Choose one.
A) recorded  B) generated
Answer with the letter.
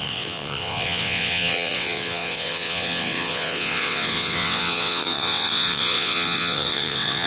B